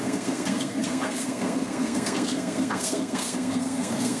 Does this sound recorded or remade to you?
remade